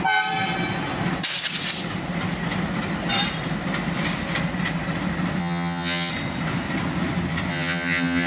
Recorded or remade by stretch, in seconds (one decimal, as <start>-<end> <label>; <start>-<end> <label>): 0.0-5.4 recorded; 5.4-6.1 remade; 6.1-7.5 recorded; 7.5-8.3 remade